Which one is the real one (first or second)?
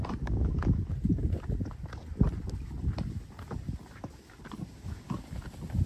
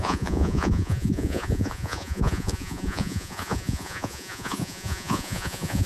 first